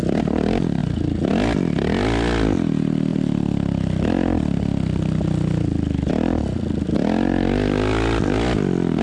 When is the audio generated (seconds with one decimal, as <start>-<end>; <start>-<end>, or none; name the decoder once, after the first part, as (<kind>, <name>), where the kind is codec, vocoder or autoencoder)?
none